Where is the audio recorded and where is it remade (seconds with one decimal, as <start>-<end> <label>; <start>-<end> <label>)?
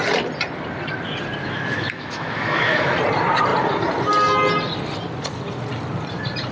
0.0-1.4 recorded; 1.4-3.0 remade; 3.0-6.5 recorded